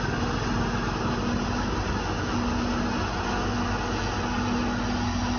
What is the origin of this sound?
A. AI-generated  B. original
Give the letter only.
B